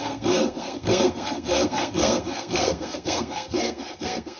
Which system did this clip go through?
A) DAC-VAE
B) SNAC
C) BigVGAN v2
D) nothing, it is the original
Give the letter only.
B